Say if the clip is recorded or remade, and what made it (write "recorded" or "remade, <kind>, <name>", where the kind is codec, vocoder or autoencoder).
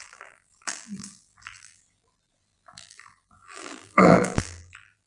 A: remade, vocoder, BigVGAN v2